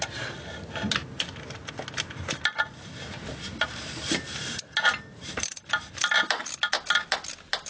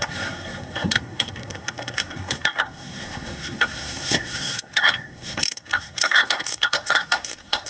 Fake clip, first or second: second